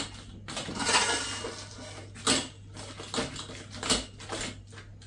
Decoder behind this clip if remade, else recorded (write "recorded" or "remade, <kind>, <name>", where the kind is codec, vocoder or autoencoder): recorded